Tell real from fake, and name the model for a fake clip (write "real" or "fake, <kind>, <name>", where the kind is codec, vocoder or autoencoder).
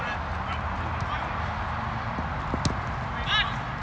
real